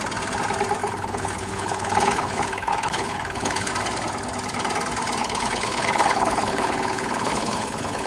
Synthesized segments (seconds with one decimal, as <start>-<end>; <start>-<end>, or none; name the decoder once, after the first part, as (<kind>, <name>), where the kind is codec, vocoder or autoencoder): 0.8-3.7 (codec, HILCodec); 5.2-8.1